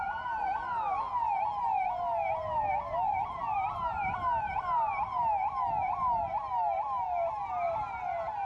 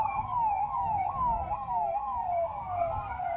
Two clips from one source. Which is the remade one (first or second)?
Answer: second